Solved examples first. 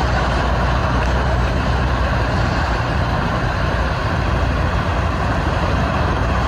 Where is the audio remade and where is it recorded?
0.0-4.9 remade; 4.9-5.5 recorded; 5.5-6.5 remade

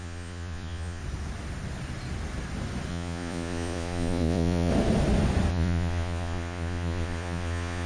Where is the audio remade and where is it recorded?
0.0-1.0 remade; 1.0-2.9 recorded; 2.9-4.7 remade; 4.7-5.5 recorded; 5.5-7.9 remade